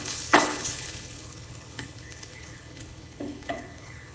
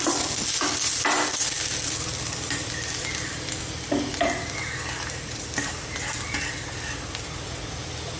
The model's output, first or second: first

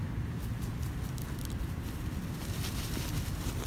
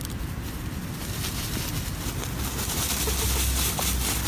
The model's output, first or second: first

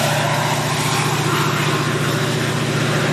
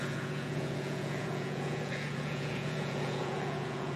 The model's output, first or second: second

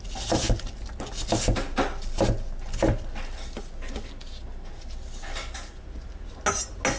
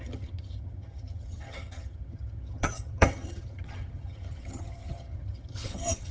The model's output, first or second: second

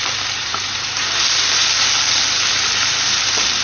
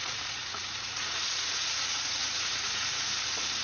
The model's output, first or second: second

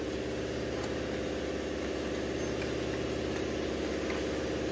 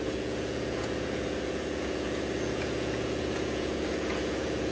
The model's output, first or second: second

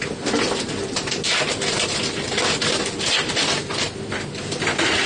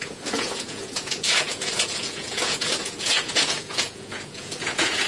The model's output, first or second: second